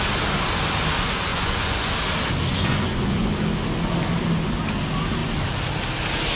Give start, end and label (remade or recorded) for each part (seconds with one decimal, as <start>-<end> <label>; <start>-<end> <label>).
0.0-1.3 recorded; 1.3-1.9 remade; 1.9-2.5 recorded; 2.5-3.3 remade; 3.3-6.4 recorded